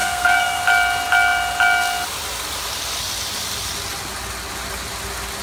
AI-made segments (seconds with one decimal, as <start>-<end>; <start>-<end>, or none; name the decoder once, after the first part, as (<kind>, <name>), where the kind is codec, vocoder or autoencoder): 0.0-0.6 (codec, SNAC)